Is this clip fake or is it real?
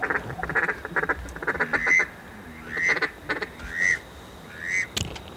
real